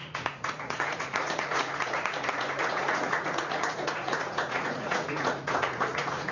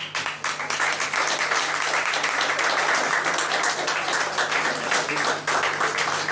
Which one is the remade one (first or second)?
first